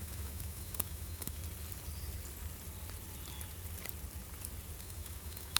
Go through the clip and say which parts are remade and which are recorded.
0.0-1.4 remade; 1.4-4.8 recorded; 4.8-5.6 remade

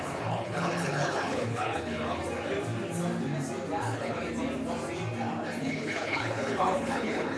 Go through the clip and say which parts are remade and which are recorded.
0.0-2.2 remade; 2.2-3.8 recorded; 3.8-4.2 remade; 4.2-5.6 recorded; 5.6-7.4 remade